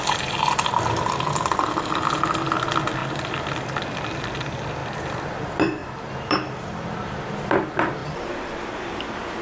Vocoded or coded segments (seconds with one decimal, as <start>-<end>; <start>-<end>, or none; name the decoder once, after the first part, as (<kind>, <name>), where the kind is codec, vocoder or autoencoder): 3.0-4.2 (vocoder, BigVGAN v2); 4.8-5.3; 5.8-7.4